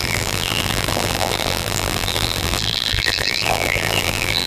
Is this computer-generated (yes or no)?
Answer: yes